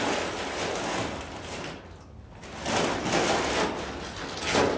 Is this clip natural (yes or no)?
yes